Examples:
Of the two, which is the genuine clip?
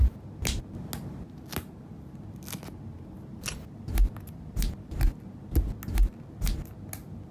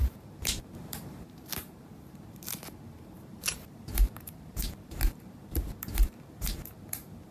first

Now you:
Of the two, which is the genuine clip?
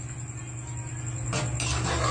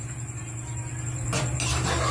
first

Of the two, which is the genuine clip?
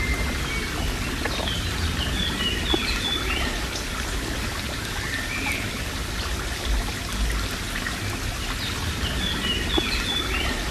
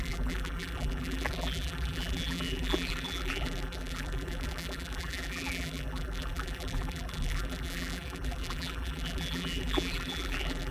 first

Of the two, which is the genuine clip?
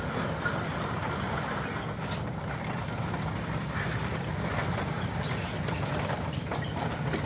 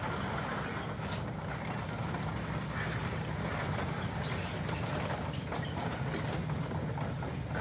second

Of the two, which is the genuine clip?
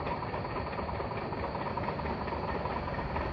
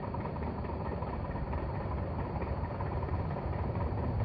first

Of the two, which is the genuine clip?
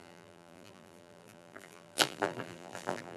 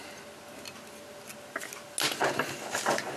second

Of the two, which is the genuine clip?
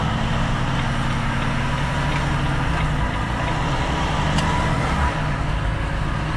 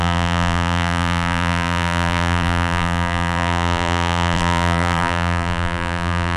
first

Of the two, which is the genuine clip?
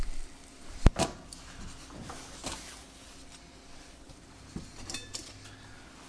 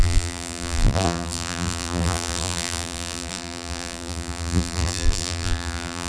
first